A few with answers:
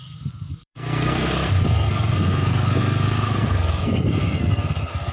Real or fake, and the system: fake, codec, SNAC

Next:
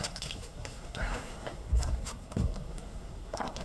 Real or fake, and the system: fake, codec, SNAC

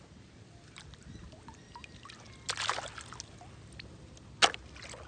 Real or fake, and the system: real